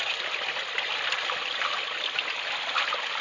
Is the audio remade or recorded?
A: recorded